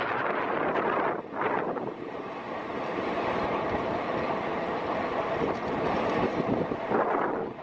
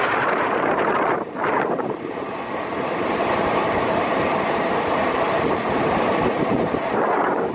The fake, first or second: second